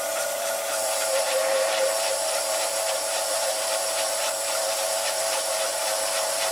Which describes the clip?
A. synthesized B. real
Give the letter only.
A